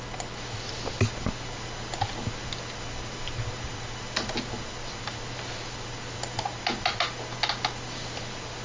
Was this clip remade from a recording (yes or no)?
no